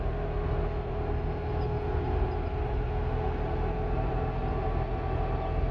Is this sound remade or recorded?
recorded